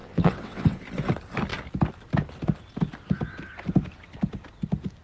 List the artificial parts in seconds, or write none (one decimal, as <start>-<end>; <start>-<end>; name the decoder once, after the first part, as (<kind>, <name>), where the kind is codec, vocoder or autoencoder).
0.0-0.8 (vocoder, WaveNeXt)